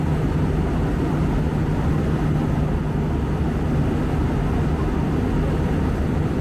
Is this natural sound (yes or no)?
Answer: yes